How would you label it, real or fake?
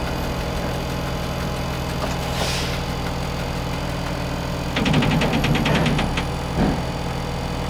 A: real